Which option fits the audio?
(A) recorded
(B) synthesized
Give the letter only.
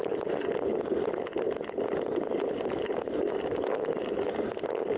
A